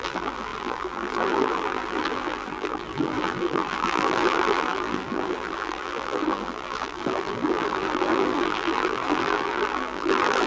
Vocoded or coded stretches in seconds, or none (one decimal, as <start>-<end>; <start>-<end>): 0.0-10.5